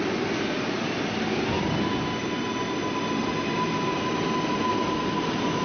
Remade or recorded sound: recorded